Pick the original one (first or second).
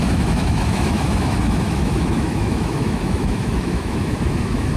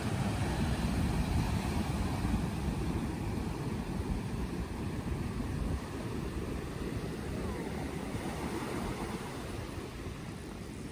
second